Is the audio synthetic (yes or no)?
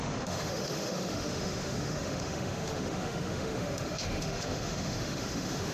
yes